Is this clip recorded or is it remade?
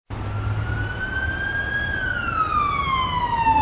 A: recorded